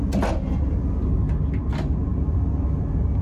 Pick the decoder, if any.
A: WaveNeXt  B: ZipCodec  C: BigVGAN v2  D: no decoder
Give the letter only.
D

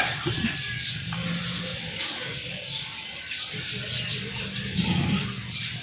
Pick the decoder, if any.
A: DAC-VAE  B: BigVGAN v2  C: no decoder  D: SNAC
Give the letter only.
B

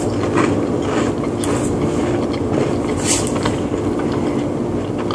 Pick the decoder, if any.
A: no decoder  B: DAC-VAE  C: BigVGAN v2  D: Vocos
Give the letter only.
A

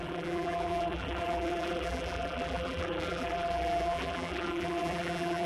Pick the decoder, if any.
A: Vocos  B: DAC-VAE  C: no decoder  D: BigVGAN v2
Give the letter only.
D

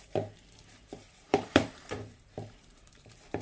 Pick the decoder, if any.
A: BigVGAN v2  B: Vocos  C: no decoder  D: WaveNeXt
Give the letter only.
A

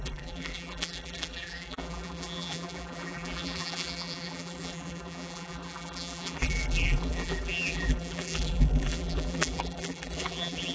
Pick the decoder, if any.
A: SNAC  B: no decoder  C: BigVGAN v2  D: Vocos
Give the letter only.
C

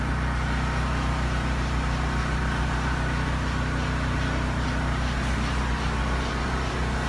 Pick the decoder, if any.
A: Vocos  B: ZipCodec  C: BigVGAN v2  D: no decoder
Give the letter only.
C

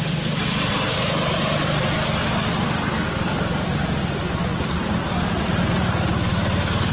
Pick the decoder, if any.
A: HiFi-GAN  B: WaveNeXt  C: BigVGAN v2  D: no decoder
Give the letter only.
D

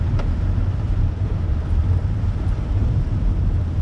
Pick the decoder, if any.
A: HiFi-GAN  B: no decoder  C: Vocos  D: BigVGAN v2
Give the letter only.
D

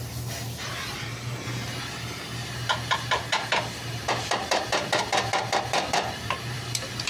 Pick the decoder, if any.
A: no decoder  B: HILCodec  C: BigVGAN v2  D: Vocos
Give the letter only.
C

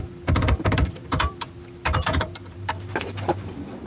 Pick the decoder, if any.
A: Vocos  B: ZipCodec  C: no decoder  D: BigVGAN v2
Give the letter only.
D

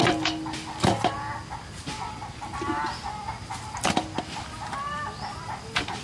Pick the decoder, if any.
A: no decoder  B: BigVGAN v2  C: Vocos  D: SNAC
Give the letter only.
A